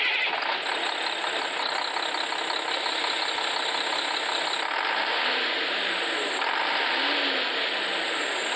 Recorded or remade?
recorded